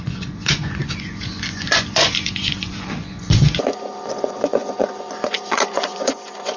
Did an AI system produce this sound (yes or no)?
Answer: yes